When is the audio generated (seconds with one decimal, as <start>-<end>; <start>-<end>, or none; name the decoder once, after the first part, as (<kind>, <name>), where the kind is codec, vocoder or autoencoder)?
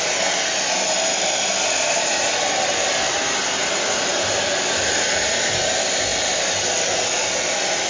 none